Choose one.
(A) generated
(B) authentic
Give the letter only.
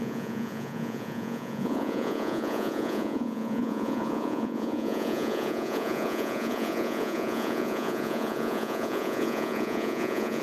A